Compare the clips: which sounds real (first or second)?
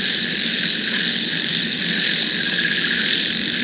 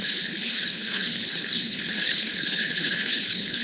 first